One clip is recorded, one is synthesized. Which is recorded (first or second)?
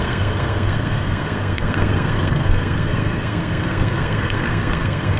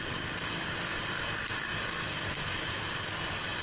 second